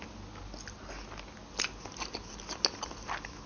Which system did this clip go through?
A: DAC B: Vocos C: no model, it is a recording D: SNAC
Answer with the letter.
C